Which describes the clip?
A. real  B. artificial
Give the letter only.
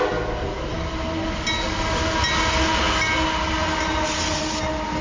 A